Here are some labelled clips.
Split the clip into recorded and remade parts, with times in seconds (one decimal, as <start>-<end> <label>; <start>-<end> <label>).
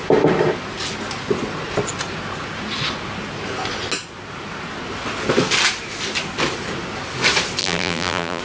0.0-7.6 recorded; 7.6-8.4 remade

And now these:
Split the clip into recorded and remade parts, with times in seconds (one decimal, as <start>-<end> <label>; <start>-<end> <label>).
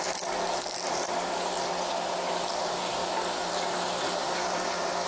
0.0-5.1 recorded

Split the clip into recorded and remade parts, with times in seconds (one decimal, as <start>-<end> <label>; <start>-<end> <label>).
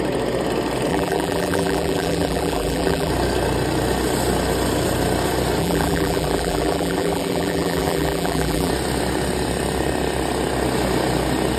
0.0-0.9 recorded; 0.9-3.1 remade; 3.1-5.6 recorded; 5.6-8.7 remade; 8.7-11.6 recorded